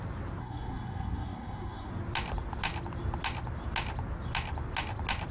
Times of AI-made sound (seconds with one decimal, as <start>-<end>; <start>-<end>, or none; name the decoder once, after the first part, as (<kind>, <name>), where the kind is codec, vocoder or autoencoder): 0.4-1.9 (codec, SNAC)